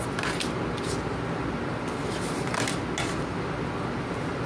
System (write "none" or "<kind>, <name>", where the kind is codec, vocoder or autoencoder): none